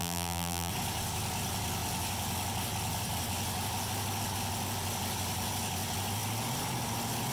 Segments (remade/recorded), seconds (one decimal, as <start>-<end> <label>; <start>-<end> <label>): 0.0-0.7 remade; 0.7-7.3 recorded